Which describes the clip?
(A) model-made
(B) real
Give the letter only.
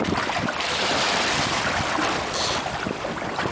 A